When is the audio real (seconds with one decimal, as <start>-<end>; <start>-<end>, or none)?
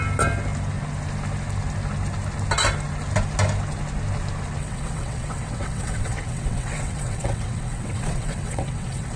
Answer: 0.0-4.6